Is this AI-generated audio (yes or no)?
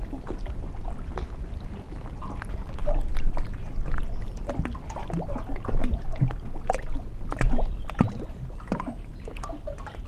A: no